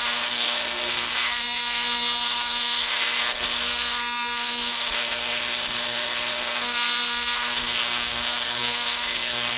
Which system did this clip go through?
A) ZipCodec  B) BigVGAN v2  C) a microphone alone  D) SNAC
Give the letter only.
D